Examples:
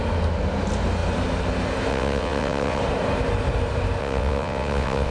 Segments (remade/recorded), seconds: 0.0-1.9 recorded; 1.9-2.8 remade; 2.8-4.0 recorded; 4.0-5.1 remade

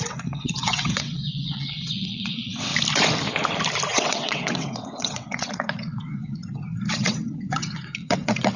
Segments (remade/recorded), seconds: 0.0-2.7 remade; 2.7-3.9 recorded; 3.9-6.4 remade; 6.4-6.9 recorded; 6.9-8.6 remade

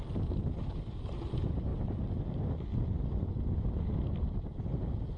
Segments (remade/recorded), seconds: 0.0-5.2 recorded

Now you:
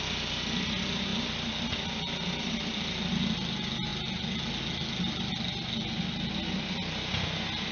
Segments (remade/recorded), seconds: 0.0-7.7 recorded

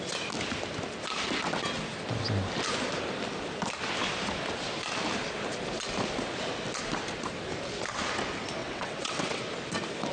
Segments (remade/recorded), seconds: 0.0-8.6 recorded; 8.6-9.4 remade; 9.4-10.1 recorded

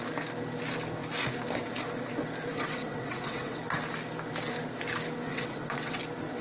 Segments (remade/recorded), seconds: 0.0-2.5 recorded; 2.5-3.6 remade; 3.6-5.3 recorded; 5.3-6.0 remade; 6.0-6.4 recorded

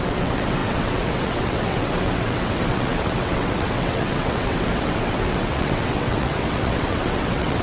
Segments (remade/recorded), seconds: 0.0-7.6 remade

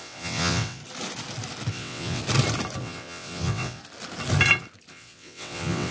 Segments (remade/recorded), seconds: 0.0-0.8 remade; 0.8-1.7 recorded; 1.7-2.2 remade; 2.2-2.8 recorded; 2.8-3.8 remade; 3.8-4.9 recorded; 4.9-5.9 remade